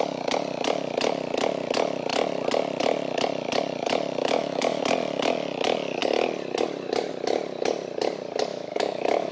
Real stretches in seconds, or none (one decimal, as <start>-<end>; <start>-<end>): 0.0-4.2; 4.8-8.5